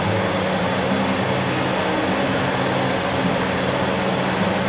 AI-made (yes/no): no